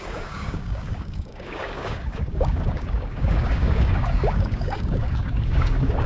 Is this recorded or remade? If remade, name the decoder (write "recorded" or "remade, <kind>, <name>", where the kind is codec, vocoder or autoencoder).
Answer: remade, codec, DAC